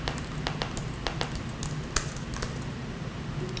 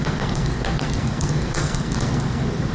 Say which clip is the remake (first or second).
second